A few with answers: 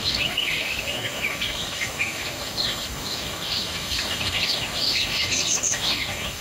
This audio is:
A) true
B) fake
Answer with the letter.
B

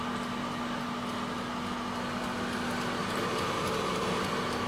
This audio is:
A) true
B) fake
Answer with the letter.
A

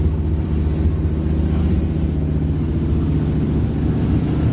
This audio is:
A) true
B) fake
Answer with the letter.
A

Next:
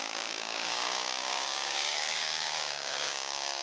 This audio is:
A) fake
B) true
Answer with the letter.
A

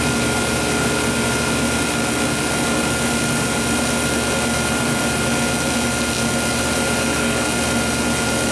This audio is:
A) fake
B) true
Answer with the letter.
B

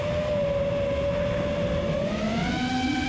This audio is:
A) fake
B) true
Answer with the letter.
B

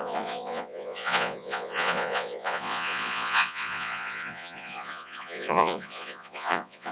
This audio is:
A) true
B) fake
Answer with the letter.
B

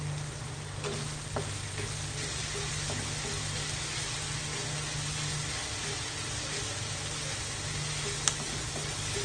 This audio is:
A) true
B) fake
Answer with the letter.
A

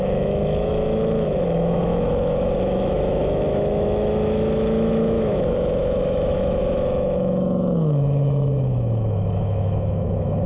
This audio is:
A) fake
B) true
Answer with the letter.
A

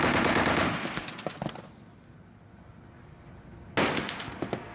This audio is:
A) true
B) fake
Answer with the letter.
A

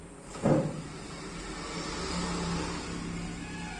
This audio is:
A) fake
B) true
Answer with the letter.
B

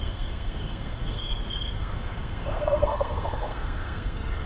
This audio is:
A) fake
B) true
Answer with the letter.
A